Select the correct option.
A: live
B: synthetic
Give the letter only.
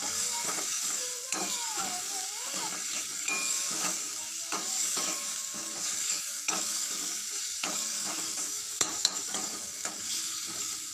B